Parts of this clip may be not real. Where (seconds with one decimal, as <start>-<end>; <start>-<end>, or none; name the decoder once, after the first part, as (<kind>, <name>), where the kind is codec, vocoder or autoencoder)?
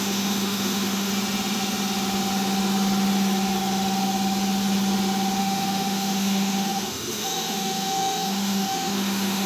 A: 0.0-1.1 (autoencoder, DAC-VAE); 5.4-9.5